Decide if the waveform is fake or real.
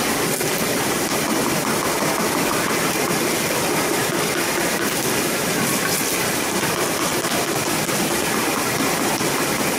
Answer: real